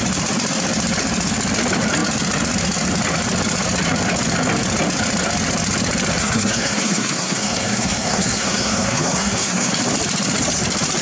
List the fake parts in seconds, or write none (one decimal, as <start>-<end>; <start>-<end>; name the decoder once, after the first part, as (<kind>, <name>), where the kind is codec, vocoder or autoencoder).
6.2-9.7 (codec, SNAC)